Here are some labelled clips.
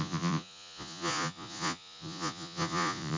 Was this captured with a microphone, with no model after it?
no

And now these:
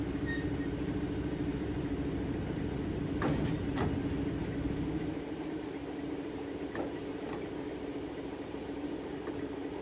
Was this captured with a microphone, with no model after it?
yes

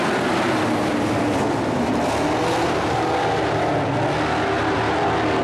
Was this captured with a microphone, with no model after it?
yes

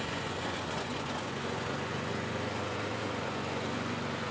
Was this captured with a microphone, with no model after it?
no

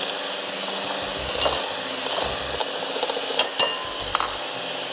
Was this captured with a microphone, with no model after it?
yes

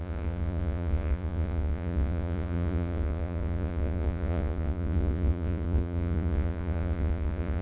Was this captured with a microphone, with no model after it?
no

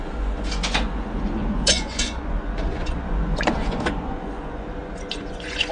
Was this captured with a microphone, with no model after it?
no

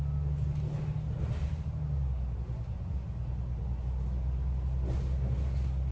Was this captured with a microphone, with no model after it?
yes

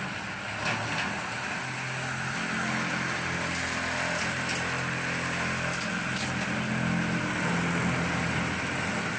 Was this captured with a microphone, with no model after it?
yes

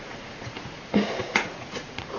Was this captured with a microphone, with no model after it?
no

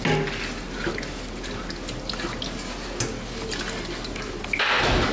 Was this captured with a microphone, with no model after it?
yes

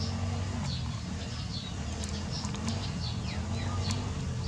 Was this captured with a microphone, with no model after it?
yes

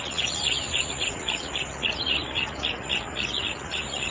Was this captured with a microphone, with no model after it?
no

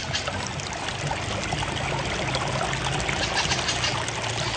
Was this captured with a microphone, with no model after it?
yes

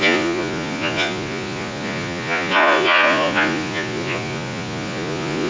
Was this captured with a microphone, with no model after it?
no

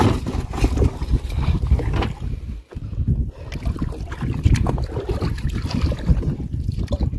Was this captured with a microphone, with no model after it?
yes